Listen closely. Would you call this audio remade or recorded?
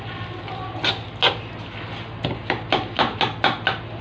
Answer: recorded